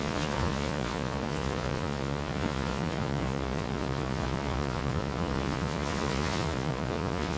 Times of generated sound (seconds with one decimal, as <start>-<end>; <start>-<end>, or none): 0.0-7.4

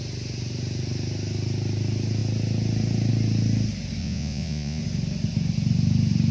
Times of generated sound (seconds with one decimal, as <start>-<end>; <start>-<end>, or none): 4.0-4.8